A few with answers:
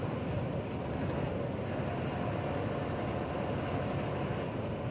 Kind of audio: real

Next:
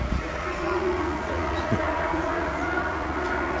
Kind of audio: fake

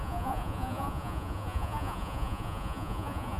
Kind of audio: fake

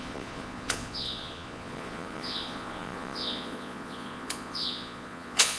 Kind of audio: fake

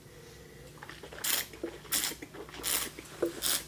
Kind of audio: real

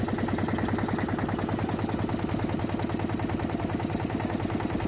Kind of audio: real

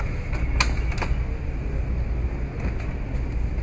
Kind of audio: real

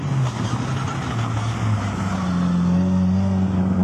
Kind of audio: real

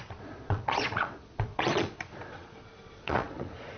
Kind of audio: fake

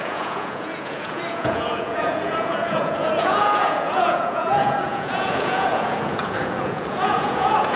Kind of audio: fake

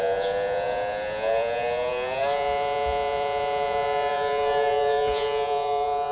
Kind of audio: fake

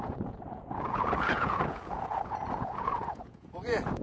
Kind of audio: fake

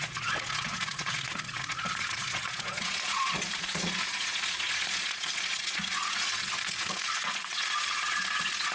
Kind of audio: fake